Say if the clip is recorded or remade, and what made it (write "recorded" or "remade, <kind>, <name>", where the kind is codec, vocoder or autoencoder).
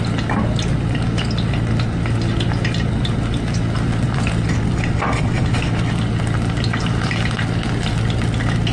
recorded